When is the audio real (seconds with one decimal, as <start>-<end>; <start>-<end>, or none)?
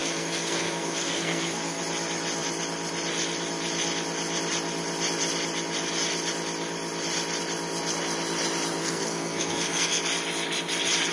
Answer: 1.8-8.8; 10.0-11.1